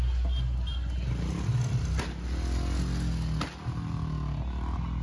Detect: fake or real real